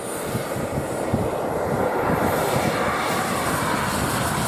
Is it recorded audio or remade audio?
recorded